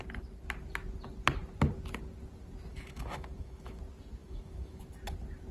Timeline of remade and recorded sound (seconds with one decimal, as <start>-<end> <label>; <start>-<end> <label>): 0.0-2.7 recorded; 2.7-3.8 remade; 3.8-4.2 recorded; 4.2-4.8 remade; 4.8-5.5 recorded